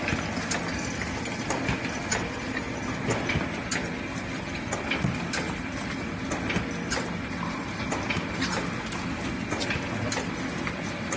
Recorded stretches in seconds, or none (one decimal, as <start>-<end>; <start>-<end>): 0.0-11.2